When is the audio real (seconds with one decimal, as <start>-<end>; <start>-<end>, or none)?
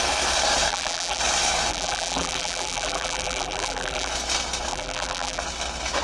0.0-0.7; 1.2-1.7; 4.1-4.7; 5.4-6.0